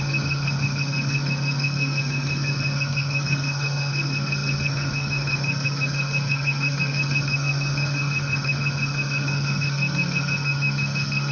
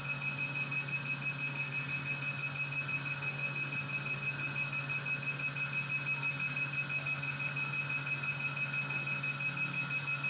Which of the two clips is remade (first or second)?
first